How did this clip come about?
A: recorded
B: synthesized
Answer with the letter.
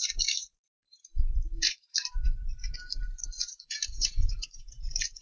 B